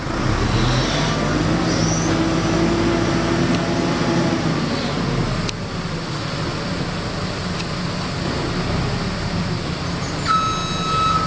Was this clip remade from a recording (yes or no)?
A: no